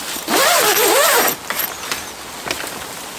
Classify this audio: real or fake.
real